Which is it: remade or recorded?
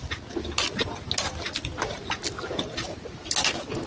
recorded